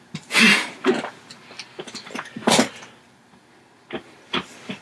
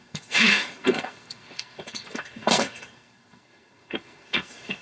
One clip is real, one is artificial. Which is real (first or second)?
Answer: first